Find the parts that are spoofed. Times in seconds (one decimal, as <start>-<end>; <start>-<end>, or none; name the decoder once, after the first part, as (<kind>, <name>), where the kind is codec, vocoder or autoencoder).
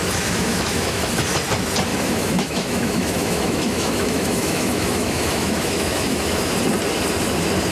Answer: 0.0-1.1 (autoencoder, DAC-VAE); 1.9-6.5